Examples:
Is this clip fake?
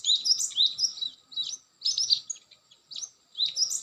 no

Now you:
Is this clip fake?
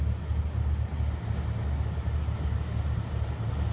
no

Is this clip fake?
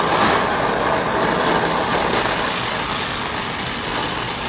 no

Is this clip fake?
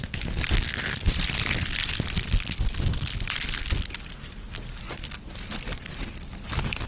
no